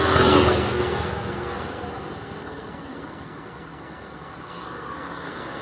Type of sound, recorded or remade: remade